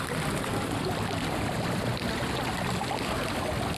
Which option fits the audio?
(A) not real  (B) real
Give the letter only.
A